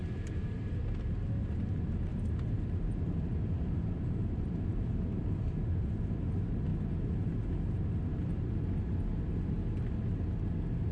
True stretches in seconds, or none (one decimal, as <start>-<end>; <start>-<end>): 0.7-2.1; 6.0-10.9